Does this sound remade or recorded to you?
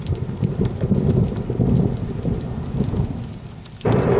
recorded